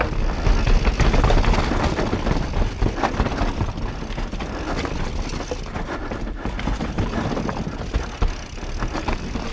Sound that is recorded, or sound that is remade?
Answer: recorded